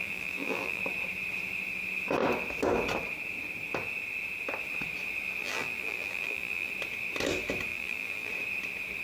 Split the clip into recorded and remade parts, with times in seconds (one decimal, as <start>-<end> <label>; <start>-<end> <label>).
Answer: 0.0-0.8 remade; 0.8-5.4 recorded; 5.4-6.7 remade; 6.7-7.7 recorded; 7.7-8.3 remade; 8.3-9.0 recorded